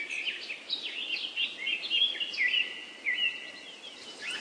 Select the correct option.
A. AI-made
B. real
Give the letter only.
B